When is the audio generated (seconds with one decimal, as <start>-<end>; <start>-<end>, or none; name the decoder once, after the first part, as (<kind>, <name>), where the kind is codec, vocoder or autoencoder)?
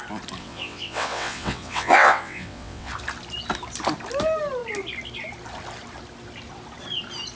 0.4-2.9 (vocoder, WaveNeXt)